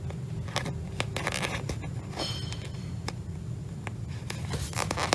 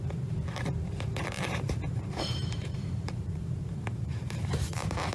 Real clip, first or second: first